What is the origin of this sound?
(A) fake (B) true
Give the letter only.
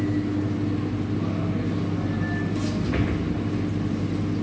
B